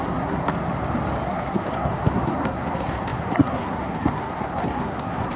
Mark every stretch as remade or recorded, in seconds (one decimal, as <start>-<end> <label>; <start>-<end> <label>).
0.0-0.5 remade; 0.5-1.3 recorded; 1.3-5.4 remade